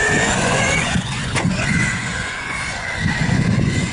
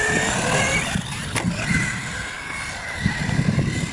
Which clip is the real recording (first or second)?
second